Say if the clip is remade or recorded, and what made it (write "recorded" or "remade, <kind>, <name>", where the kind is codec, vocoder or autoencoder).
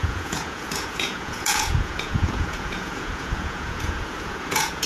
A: remade, vocoder, Vocos